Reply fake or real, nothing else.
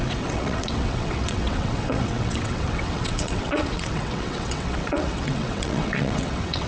fake